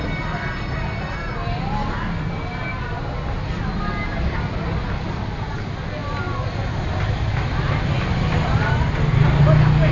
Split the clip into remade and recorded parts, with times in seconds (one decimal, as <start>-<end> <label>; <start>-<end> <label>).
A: 0.0-9.9 recorded